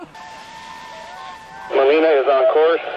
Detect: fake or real real